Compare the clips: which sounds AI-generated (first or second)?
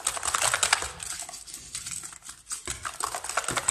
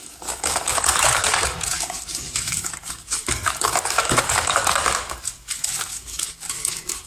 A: second